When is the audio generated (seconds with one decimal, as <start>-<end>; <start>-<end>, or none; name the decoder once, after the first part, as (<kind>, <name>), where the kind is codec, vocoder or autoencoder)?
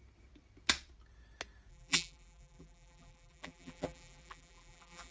1.7-5.1 (vocoder, BigVGAN v2)